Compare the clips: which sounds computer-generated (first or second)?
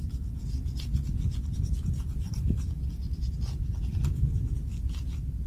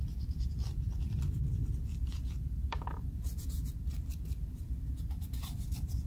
second